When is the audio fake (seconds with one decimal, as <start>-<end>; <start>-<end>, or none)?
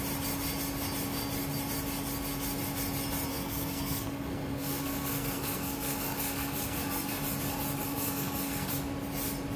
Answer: 3.3-7.1; 7.8-8.7